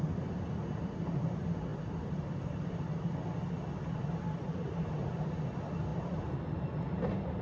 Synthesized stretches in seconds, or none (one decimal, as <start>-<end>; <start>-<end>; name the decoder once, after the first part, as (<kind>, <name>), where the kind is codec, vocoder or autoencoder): none